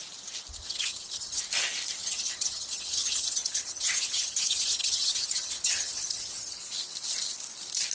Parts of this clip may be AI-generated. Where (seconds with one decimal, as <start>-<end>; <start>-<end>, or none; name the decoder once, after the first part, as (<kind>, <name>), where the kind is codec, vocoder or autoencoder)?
0.6-1.4 (vocoder, HiFi-GAN); 2.0-6.6